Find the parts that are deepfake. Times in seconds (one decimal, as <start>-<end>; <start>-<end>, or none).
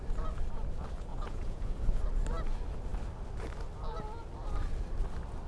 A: 1.1-2.0